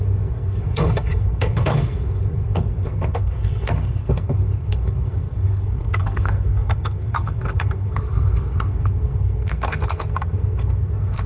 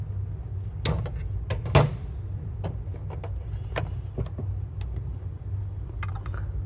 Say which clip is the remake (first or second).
first